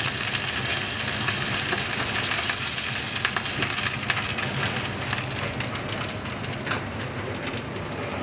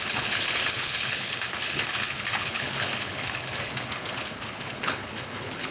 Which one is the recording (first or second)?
first